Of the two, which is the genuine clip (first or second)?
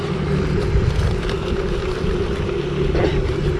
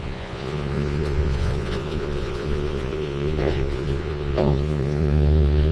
first